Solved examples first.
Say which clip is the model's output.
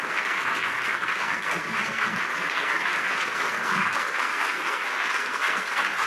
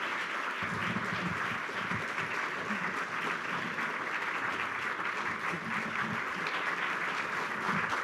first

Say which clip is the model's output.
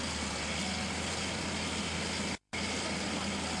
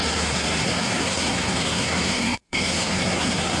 second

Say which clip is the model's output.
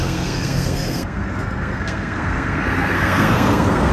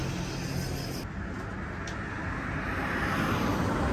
first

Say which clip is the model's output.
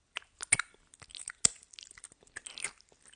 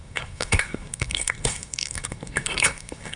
second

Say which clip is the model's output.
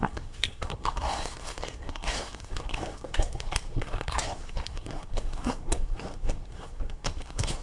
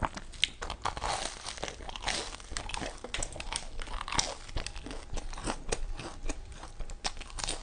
first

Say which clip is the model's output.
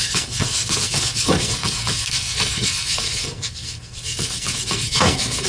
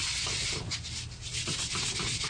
first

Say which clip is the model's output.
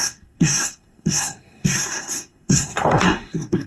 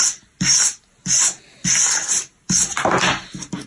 first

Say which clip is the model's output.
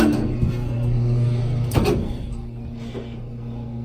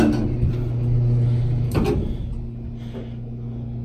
first